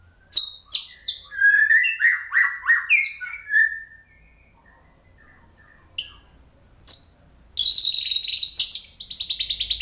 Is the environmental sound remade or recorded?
recorded